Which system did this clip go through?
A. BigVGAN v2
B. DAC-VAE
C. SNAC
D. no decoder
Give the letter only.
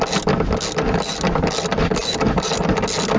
D